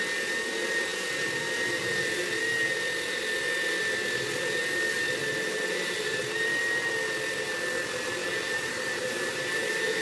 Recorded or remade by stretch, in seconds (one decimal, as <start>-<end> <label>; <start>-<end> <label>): 0.0-5.2 recorded; 5.2-6.2 remade; 6.2-8.2 recorded; 8.2-10.0 remade